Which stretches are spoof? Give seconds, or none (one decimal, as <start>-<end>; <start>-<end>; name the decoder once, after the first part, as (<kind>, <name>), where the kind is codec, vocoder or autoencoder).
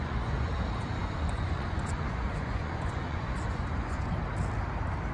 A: 0.0-0.5 (vocoder, Vocos); 1.0-4.1